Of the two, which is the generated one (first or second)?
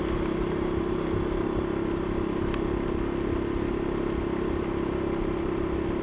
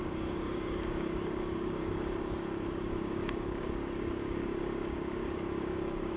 second